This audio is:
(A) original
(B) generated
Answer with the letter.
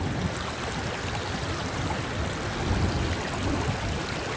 A